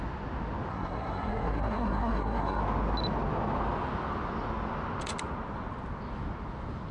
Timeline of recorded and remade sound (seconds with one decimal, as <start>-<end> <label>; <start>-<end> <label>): 0.0-0.7 recorded; 0.7-2.6 remade; 2.6-6.9 recorded